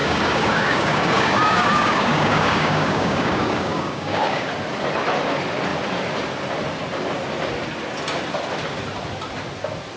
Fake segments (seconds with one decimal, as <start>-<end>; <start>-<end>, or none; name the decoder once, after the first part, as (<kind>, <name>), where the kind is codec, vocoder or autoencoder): 0.0-4.5 (codec, DAC)